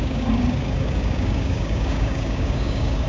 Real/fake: fake